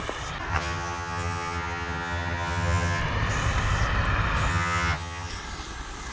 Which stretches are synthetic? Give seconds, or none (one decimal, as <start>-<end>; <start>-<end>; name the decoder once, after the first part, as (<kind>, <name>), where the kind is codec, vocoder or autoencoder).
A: 0.5-3.0 (vocoder, HiFi-GAN); 4.5-5.3

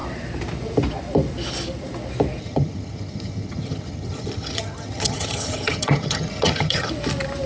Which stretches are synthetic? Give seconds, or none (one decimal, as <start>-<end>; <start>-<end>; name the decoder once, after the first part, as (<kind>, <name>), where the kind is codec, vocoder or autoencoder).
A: 2.4-6.9 (vocoder, HiFi-GAN)

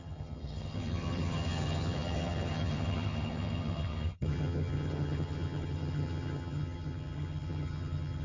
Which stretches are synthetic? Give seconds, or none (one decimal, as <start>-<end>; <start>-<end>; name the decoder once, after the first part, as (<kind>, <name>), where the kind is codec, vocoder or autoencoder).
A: 0.0-8.2 (vocoder, HiFi-GAN)

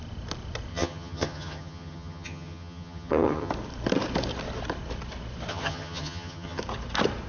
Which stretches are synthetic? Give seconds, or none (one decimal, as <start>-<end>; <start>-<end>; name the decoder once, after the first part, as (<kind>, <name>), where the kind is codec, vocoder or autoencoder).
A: 0.7-3.5 (vocoder, HiFi-GAN); 5.5-6.6

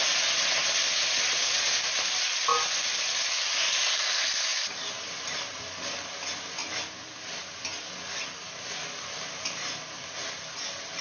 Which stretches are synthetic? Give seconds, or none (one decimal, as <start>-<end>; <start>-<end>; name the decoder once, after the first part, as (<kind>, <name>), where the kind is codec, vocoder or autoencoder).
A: none

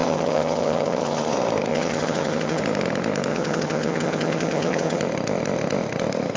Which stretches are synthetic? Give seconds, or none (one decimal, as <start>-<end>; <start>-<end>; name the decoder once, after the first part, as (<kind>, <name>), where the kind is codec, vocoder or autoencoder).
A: 0.0-1.2 (vocoder, HiFi-GAN); 1.7-2.6; 3.3-5.0

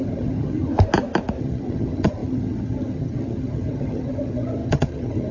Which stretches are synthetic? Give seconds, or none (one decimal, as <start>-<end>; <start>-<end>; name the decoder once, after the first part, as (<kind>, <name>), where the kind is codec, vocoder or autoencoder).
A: 0.0-0.7 (vocoder, HiFi-GAN); 1.4-5.3

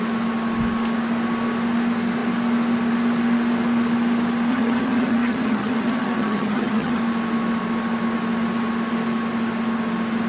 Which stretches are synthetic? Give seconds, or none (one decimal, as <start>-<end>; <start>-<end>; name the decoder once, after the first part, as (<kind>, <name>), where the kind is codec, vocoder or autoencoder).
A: 4.5-7.0 (vocoder, HiFi-GAN)